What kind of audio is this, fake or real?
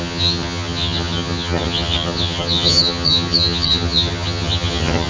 fake